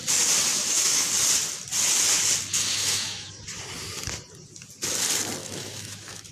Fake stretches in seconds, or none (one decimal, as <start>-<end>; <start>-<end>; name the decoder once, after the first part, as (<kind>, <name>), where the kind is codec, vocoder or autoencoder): 0.5-1.1 (autoencoder, DAC-VAE); 2.6-3.3; 5.4-6.3